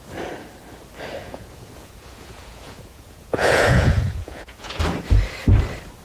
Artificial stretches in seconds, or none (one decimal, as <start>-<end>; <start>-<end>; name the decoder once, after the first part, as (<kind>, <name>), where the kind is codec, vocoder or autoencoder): 1.2-4.8 (vocoder, Vocos)